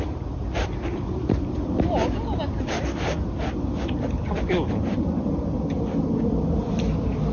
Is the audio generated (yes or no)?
no